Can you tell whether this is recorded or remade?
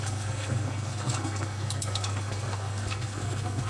remade